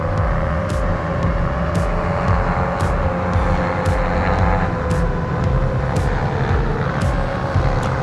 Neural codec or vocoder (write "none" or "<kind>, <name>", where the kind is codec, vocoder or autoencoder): none